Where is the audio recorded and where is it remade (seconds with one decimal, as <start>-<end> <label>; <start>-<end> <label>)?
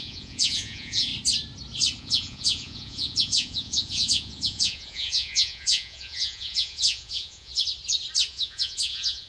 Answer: 0.0-1.1 remade; 1.1-2.0 recorded; 2.0-7.5 remade; 7.5-8.3 recorded; 8.3-9.3 remade